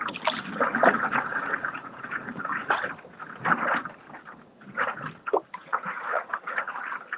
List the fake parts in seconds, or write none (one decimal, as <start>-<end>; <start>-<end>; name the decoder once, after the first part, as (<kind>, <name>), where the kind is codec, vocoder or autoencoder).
1.3-2.7 (vocoder, Vocos); 5.6-6.7